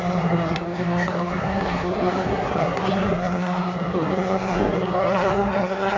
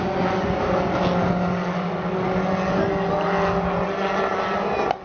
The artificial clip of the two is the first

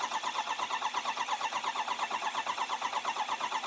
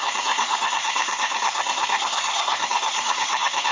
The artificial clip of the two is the second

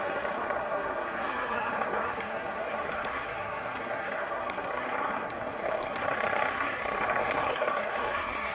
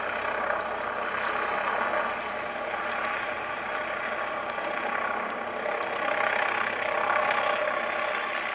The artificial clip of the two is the first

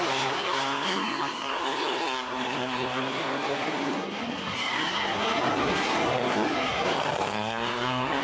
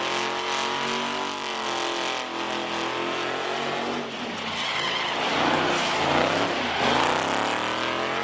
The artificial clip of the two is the first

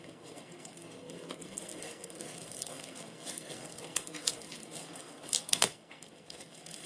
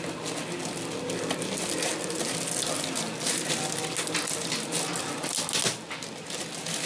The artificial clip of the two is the first